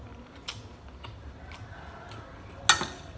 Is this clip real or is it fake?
real